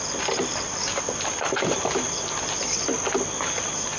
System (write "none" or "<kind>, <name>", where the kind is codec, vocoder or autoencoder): none